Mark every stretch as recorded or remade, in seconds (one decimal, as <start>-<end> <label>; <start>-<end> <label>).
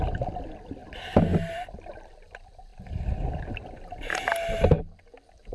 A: 0.0-5.5 recorded